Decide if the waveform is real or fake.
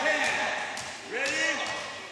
real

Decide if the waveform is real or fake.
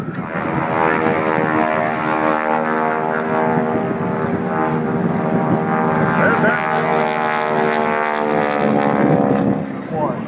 real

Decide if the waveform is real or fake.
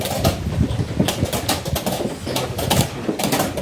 real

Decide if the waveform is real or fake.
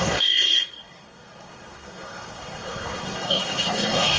fake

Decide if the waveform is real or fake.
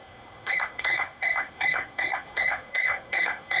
fake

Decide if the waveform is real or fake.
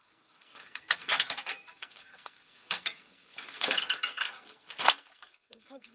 fake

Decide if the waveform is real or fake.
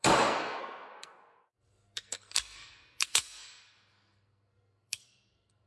fake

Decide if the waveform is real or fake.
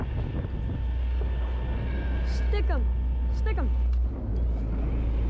real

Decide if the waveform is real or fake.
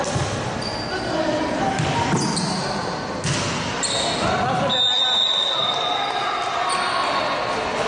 real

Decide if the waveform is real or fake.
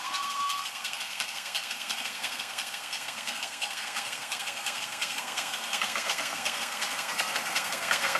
fake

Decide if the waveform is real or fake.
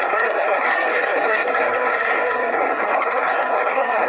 fake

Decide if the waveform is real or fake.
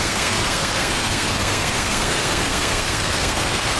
fake